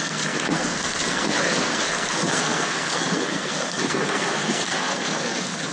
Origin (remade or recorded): remade